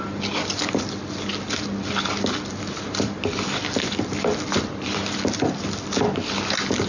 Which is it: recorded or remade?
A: recorded